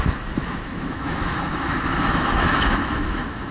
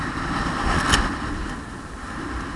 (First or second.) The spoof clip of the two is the first